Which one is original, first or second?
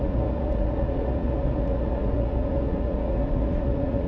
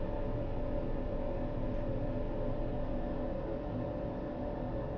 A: second